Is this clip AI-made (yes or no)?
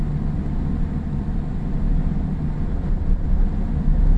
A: no